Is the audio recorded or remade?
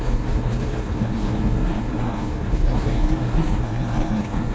remade